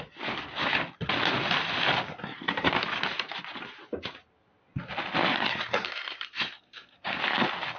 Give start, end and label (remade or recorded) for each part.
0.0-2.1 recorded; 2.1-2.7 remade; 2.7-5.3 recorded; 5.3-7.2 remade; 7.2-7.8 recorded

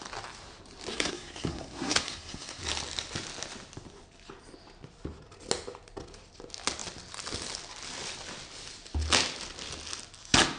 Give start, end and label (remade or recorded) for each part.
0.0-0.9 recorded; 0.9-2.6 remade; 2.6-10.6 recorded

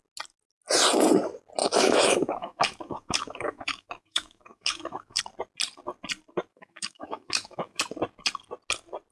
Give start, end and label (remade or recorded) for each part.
0.0-1.6 recorded; 1.6-5.2 remade; 5.2-6.5 recorded; 6.5-7.8 remade; 7.8-9.1 recorded

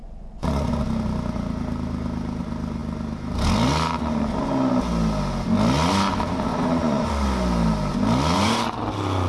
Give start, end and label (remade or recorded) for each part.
0.0-0.8 remade; 0.8-6.5 recorded; 6.5-7.1 remade; 7.1-9.3 recorded

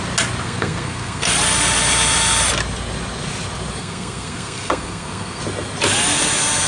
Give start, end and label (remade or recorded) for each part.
0.0-0.4 recorded; 0.4-1.3 remade; 1.3-3.8 recorded; 3.8-5.4 remade; 5.4-6.7 recorded

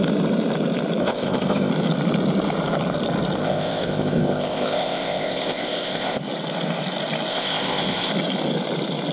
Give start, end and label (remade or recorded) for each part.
0.0-1.0 recorded; 1.0-1.7 remade; 1.7-3.4 recorded; 3.4-6.2 remade; 6.2-7.3 recorded; 7.3-8.1 remade; 8.1-9.1 recorded

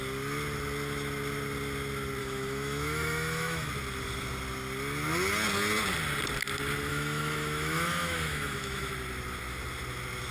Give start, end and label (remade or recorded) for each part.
0.0-2.2 recorded; 2.2-3.7 remade; 3.7-6.9 recorded; 6.9-8.9 remade; 8.9-10.3 recorded